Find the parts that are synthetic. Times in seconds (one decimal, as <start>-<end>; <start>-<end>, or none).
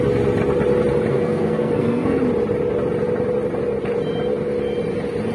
1.1-2.2